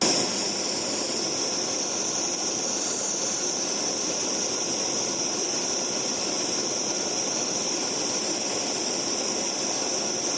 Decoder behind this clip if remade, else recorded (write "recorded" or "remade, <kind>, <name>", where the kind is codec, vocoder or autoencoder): recorded